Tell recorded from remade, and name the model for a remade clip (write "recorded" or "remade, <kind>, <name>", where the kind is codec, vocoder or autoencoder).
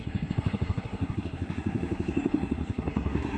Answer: remade, codec, SNAC